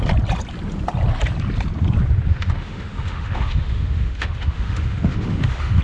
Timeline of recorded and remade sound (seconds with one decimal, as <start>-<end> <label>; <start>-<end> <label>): 0.0-2.3 recorded; 2.3-5.8 remade